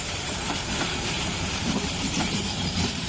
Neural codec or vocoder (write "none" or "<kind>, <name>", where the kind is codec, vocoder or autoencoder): vocoder, BigVGAN v2